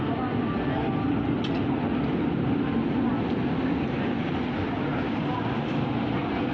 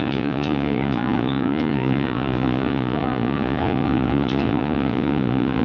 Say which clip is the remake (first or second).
second